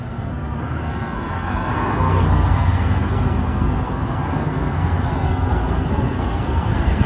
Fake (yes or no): yes